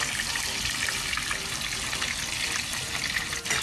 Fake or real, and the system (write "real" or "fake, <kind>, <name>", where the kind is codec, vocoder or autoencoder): real